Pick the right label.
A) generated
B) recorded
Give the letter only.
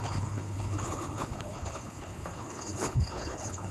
A